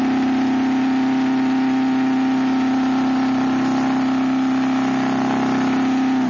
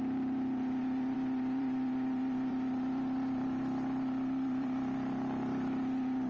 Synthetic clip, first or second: second